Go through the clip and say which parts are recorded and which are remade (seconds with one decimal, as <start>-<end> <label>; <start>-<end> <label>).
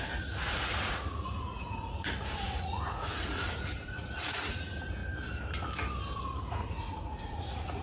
0.0-5.0 remade; 5.0-6.4 recorded; 6.4-7.8 remade